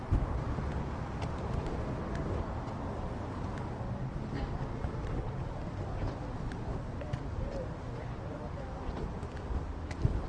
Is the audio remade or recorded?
recorded